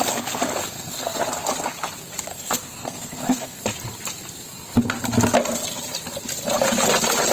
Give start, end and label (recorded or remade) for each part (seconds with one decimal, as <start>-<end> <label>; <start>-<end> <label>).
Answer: 0.0-0.6 recorded; 0.6-1.2 remade; 1.2-2.3 recorded; 2.3-3.6 remade; 3.6-7.3 recorded